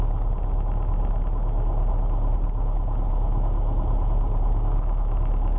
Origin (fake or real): real